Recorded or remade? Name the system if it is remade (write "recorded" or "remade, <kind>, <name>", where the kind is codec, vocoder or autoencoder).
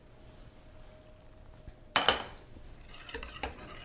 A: recorded